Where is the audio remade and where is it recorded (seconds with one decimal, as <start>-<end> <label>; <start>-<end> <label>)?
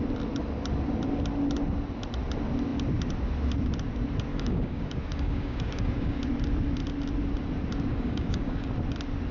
0.0-4.3 recorded; 4.3-6.2 remade; 6.2-7.9 recorded; 7.9-8.7 remade; 8.7-9.3 recorded